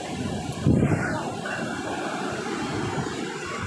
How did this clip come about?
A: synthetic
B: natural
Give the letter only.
B